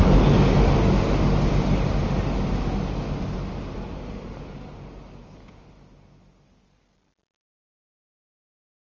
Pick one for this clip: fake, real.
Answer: real